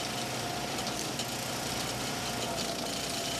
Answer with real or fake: real